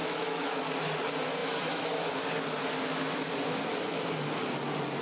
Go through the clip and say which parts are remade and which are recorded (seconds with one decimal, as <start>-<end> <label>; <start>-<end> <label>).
0.0-0.6 remade; 0.6-5.0 recorded